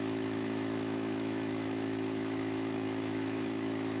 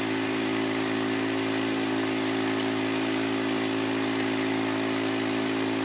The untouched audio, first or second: second